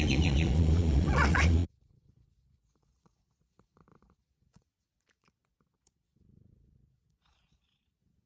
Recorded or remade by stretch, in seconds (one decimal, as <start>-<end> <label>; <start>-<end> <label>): 0.0-8.3 remade